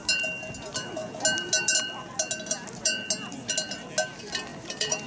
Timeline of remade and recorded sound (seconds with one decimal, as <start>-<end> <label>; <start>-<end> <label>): 0.0-4.5 recorded; 4.5-5.1 remade